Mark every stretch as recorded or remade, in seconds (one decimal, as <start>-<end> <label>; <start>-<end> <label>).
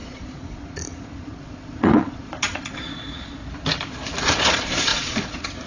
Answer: 0.0-3.4 remade; 3.4-4.2 recorded; 4.2-5.7 remade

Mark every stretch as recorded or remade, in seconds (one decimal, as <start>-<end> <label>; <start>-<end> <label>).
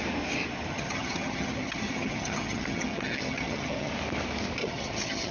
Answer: 0.0-0.7 recorded; 0.7-3.9 remade; 3.9-4.6 recorded; 4.6-5.3 remade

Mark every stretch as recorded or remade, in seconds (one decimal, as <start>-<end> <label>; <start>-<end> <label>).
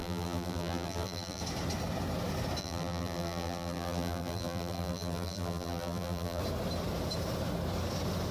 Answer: 0.0-1.4 remade; 1.4-2.6 recorded; 2.6-6.4 remade; 6.4-8.3 recorded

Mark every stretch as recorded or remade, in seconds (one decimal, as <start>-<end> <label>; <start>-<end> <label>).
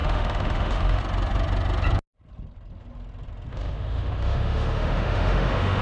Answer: 0.0-1.0 remade; 1.0-3.5 recorded; 3.5-5.8 remade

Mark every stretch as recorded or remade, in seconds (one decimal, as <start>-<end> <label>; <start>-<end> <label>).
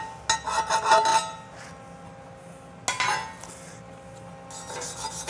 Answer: 0.0-5.3 recorded